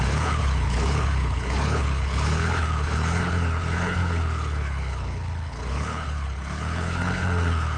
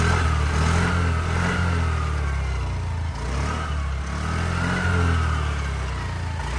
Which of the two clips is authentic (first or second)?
second